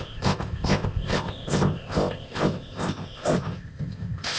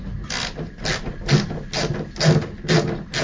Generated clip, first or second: first